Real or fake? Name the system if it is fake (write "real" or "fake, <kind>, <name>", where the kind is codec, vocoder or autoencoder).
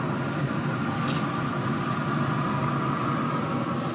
real